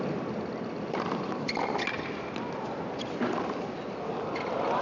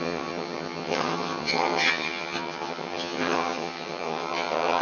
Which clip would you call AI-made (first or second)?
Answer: second